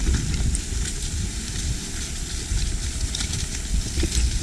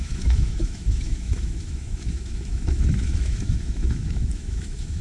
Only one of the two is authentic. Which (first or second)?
first